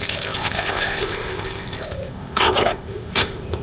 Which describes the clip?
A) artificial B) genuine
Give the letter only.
A